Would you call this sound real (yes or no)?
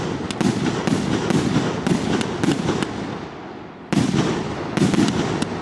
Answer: yes